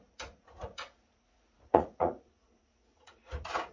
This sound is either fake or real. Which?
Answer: fake